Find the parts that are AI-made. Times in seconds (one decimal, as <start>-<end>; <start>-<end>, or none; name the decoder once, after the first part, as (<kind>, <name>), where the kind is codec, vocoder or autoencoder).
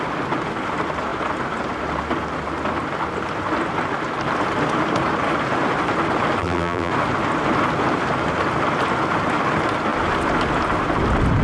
6.4-6.9 (vocoder, BigVGAN v2)